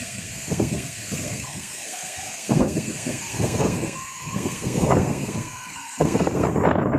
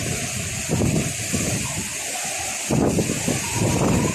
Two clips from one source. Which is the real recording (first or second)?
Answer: second